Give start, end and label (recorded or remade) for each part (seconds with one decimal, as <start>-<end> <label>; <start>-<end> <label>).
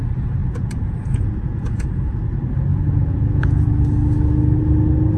0.0-0.4 recorded; 0.4-2.2 remade; 2.2-2.7 recorded; 2.7-3.7 remade; 3.7-5.2 recorded